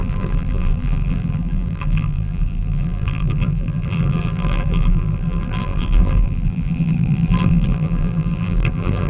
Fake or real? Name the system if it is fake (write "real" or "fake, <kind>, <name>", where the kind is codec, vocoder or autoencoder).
fake, vocoder, BigVGAN v2